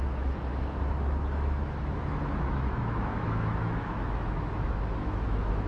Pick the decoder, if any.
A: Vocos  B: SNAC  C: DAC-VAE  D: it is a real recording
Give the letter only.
C